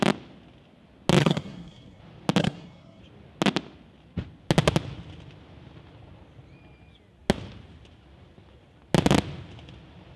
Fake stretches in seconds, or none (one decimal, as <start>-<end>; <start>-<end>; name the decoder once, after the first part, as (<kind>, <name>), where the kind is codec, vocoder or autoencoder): 1.2-2.0 (codec, SNAC); 2.4-3.0